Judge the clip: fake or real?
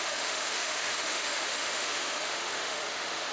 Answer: fake